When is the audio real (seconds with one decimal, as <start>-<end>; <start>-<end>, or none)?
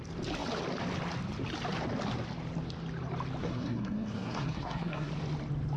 0.0-3.4; 5.1-5.8